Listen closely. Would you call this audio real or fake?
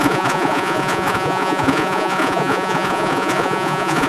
fake